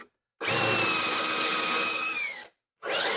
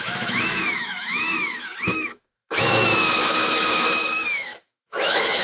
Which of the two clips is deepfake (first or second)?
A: second